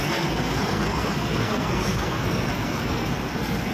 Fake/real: fake